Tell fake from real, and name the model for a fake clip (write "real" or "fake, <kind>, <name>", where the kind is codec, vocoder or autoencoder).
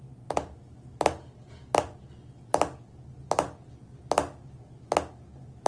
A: real